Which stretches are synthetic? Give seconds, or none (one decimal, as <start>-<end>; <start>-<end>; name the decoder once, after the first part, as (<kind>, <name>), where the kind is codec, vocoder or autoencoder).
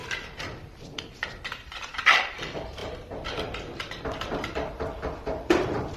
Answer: 0.0-2.0 (vocoder, BigVGAN v2); 2.8-6.0